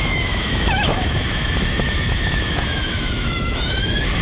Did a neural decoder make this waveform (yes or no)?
yes